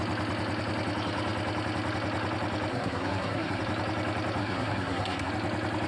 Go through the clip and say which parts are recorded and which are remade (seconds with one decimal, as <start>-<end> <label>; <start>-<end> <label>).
0.0-2.7 recorded; 2.7-3.6 remade; 3.6-4.4 recorded; 4.4-5.3 remade; 5.3-5.9 recorded